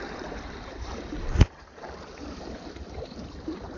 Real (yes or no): no